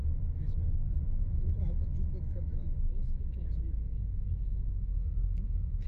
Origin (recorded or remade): remade